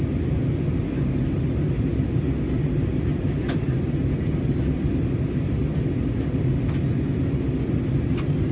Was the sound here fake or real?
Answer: real